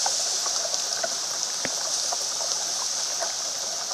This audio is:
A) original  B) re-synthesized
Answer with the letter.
A